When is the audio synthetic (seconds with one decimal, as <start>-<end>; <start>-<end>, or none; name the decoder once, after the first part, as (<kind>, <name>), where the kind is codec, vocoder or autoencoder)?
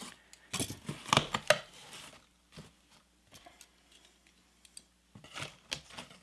none